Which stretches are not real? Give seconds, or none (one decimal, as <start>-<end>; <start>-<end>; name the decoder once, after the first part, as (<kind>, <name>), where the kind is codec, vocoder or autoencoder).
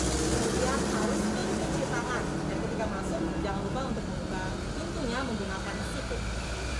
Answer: none